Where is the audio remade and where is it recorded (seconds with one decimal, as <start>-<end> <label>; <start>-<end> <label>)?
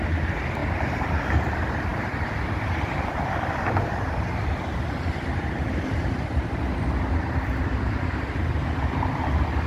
0.0-9.7 recorded